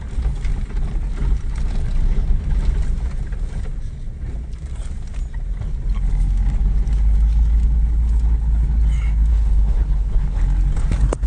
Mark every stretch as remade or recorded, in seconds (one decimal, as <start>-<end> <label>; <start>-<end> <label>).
0.0-9.3 recorded; 9.3-10.4 remade; 10.4-11.3 recorded

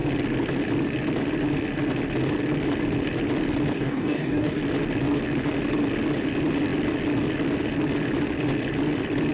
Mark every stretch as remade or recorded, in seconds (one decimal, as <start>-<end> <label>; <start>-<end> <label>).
0.0-3.7 recorded; 3.7-4.6 remade; 4.6-9.3 recorded

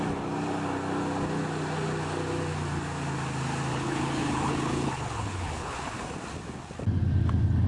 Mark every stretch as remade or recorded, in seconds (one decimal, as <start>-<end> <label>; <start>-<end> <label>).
0.0-3.7 recorded; 3.7-6.0 remade; 6.0-7.7 recorded